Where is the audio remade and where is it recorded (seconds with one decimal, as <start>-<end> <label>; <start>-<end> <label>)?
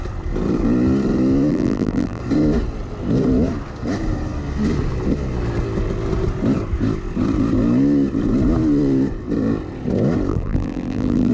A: 0.0-1.5 recorded; 1.5-2.2 remade; 2.2-10.3 recorded; 10.3-11.3 remade